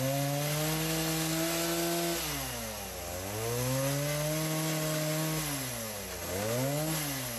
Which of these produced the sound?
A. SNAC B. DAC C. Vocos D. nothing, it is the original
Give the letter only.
D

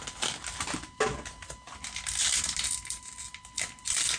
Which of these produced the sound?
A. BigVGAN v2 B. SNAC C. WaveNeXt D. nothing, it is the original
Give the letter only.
D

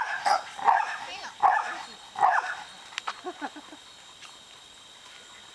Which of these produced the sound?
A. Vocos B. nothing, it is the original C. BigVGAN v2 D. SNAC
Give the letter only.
B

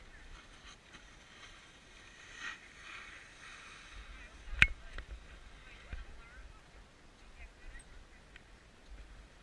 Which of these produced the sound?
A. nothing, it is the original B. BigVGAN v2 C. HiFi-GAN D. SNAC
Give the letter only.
A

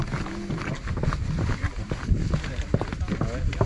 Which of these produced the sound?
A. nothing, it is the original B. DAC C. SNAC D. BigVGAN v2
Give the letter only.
A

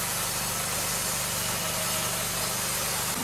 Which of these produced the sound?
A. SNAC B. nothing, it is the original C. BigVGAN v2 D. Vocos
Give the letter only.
B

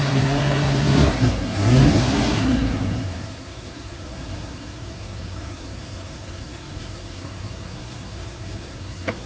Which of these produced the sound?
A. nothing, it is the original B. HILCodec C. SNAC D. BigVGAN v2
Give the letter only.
C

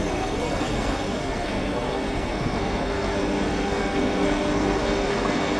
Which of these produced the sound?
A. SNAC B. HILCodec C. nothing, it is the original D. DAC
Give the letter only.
A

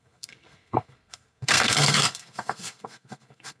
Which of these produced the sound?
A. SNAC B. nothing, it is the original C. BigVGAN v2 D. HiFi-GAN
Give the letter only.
A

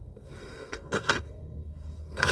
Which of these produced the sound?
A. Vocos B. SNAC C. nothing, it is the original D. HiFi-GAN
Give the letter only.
B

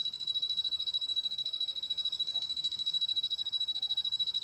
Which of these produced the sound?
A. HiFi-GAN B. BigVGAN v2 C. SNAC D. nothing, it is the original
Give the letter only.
C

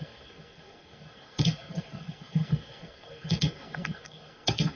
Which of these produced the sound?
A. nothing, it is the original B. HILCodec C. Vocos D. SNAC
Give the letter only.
D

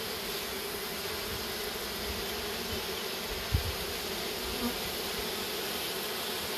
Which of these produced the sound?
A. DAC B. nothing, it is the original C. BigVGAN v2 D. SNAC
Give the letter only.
B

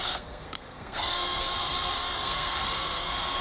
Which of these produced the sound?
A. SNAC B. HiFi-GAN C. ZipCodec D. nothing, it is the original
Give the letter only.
A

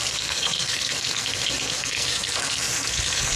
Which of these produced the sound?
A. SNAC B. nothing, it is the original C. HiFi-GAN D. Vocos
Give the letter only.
A